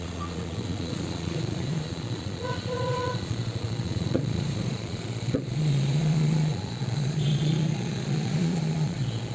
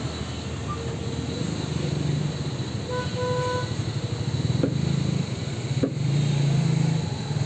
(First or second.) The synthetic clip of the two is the first